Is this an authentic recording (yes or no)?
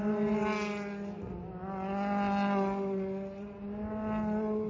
yes